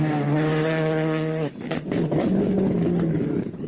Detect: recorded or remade recorded